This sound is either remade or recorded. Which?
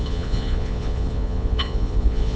remade